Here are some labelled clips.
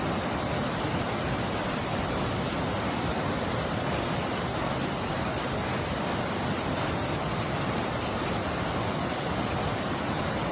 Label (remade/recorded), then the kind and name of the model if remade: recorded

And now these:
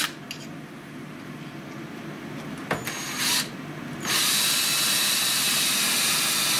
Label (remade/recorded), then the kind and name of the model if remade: recorded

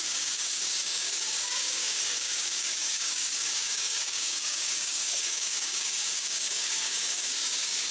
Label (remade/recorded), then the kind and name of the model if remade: remade, codec, DAC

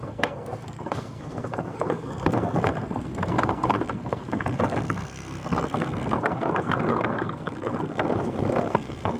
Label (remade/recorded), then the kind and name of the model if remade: remade, codec, SNAC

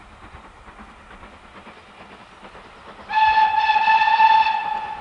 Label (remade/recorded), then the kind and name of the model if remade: recorded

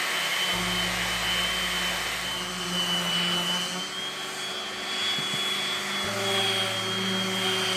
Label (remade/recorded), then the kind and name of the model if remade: recorded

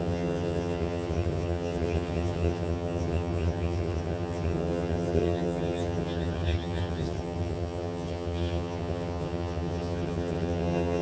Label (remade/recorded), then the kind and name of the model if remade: remade, vocoder, HiFi-GAN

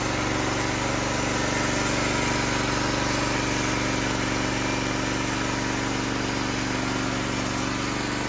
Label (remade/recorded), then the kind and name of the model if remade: recorded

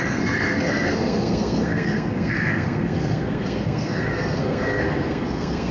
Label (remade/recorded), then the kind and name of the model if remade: remade, codec, SNAC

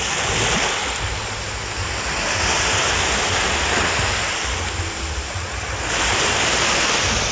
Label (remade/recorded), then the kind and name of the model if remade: recorded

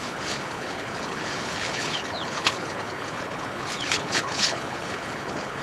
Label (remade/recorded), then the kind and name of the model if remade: remade, codec, HILCodec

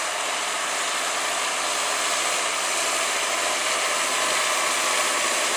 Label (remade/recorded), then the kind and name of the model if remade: recorded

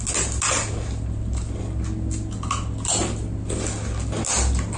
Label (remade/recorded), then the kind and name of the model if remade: recorded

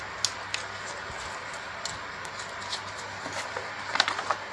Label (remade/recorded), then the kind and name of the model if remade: recorded